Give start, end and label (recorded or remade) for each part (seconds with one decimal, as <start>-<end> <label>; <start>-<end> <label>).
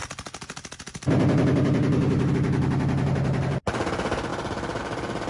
0.0-2.3 remade; 2.3-4.3 recorded; 4.3-4.8 remade; 4.8-5.3 recorded